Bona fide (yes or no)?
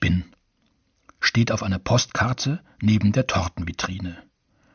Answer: yes